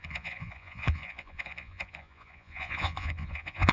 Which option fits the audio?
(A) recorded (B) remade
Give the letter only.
B